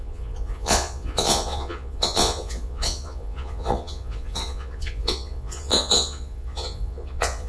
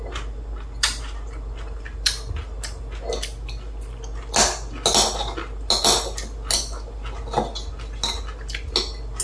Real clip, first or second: second